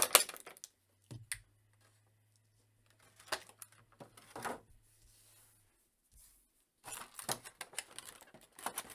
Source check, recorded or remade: recorded